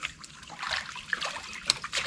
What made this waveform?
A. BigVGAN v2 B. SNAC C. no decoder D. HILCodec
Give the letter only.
C